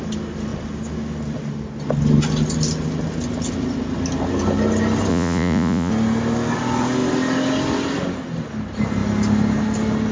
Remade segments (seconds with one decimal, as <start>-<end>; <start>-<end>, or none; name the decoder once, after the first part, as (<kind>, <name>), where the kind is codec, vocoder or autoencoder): 5.1-5.9 (vocoder, Vocos)